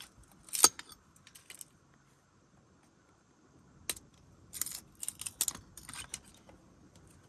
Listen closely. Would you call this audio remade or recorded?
recorded